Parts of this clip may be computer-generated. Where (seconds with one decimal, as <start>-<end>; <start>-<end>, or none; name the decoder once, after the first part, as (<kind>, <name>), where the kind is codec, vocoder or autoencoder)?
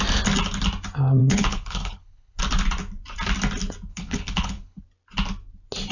1.2-2.4 (codec, HILCodec); 3.9-4.8